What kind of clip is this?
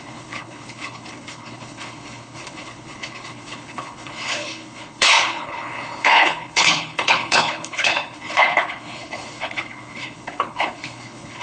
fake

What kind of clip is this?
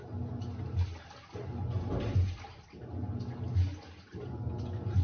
real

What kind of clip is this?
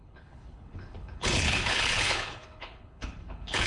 fake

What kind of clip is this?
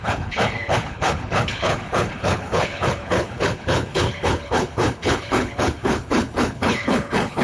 fake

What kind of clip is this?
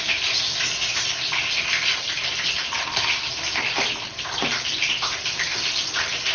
real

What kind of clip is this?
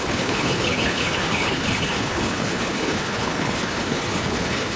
fake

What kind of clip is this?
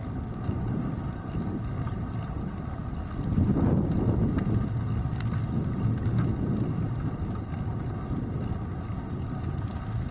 real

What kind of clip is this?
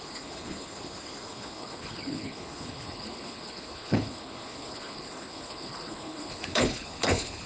fake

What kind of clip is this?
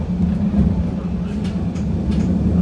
real